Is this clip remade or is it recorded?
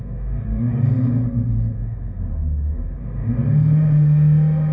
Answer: remade